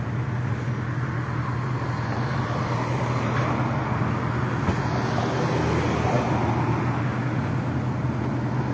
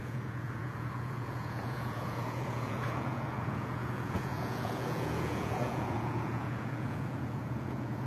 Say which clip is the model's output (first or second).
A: second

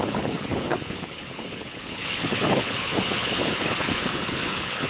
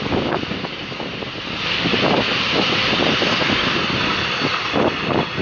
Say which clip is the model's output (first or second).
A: first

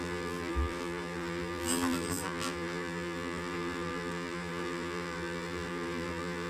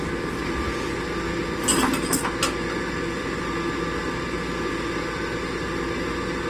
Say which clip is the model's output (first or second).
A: first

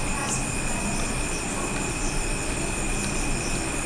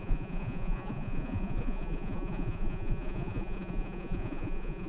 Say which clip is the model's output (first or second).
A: second